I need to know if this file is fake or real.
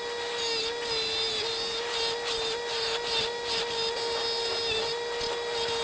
real